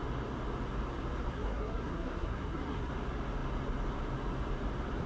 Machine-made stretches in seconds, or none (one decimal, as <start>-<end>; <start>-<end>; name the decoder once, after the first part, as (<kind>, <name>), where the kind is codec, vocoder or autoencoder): 1.3-2.9 (codec, SNAC)